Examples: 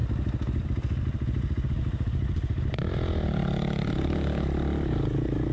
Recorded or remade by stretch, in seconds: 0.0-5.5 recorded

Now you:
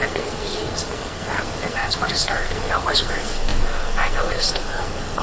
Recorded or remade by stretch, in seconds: 0.0-5.2 remade

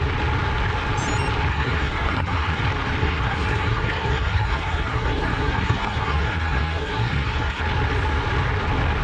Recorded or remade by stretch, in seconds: 0.0-1.5 recorded; 1.5-2.6 remade; 2.6-3.0 recorded; 3.0-7.6 remade; 7.6-9.0 recorded

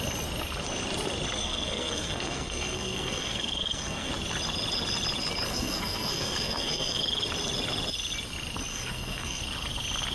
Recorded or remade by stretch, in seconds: 0.0-1.4 recorded; 1.4-4.1 remade; 4.1-5.5 recorded; 5.5-7.0 remade; 7.0-8.7 recorded; 8.7-9.4 remade; 9.4-10.1 recorded

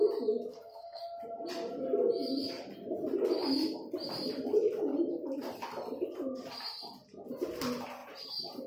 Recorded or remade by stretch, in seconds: 0.0-0.5 recorded; 0.5-1.0 remade; 1.0-8.7 recorded